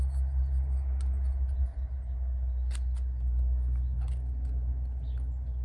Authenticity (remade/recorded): recorded